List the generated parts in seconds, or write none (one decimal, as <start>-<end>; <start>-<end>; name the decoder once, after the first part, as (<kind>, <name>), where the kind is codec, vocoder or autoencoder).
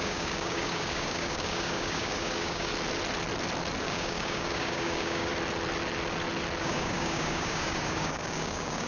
0.0-2.7 (codec, DAC); 3.8-5.3; 6.6-8.9